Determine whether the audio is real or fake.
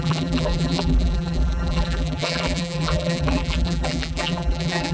fake